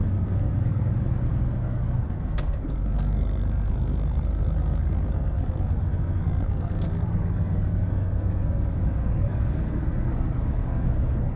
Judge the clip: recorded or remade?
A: remade